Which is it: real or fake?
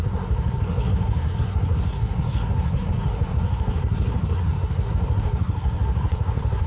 fake